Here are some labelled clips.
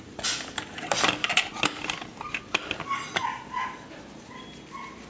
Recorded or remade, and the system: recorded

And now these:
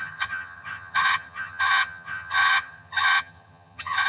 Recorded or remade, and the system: remade, vocoder, HiFi-GAN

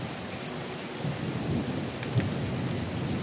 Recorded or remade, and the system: recorded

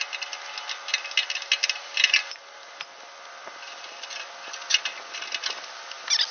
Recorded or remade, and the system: recorded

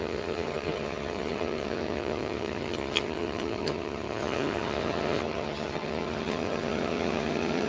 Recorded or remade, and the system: remade, vocoder, HiFi-GAN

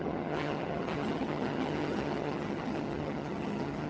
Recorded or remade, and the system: remade, vocoder, HiFi-GAN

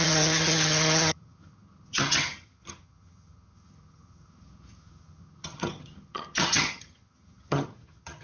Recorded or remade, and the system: remade, vocoder, HiFi-GAN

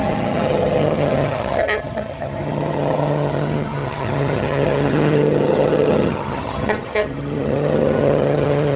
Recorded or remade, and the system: remade, vocoder, HiFi-GAN